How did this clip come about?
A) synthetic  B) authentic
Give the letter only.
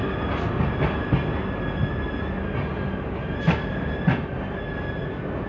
B